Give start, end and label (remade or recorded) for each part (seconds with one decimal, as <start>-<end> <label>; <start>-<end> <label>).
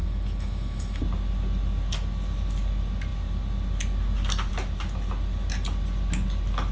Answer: 0.0-1.0 remade; 1.0-6.7 recorded